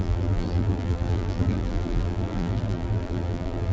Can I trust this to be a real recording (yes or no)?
no